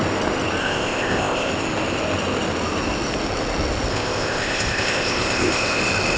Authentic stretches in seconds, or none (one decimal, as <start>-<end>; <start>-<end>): 0.0-0.6; 1.5-3.9; 5.8-6.2